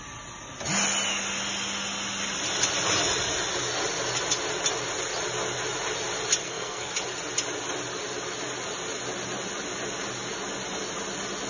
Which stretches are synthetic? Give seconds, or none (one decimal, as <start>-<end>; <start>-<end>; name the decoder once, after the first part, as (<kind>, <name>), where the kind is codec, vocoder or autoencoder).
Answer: 6.4-6.9 (codec, SNAC)